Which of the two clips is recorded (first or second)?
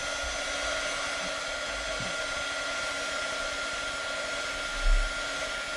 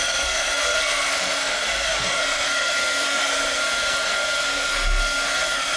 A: first